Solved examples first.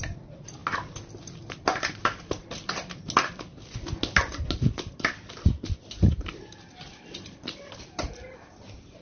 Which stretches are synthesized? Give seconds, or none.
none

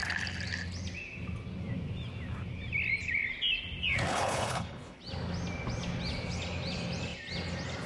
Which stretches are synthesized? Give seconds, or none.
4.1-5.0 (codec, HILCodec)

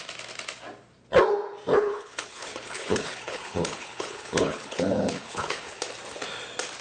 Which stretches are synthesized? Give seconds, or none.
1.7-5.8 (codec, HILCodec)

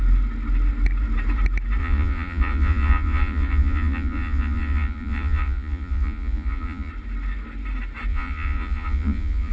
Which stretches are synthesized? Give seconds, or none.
1.8-6.9 (vocoder, Vocos); 8.1-9.5

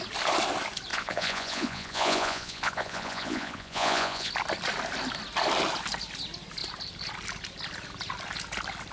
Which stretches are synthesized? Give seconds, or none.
0.9-4.3 (vocoder, Vocos)

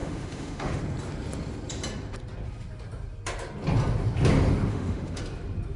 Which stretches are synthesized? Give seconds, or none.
0.0-0.8 (autoencoder, DAC-VAE); 4.7-5.2